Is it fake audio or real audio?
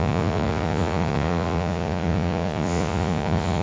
fake